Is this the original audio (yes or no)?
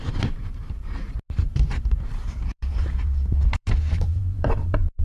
no